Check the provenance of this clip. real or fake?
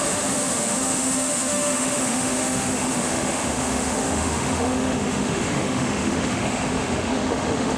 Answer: fake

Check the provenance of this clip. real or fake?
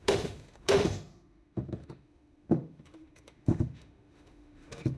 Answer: fake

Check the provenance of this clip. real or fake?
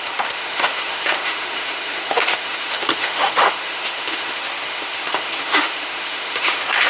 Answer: fake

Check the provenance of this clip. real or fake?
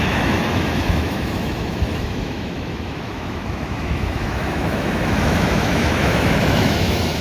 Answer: fake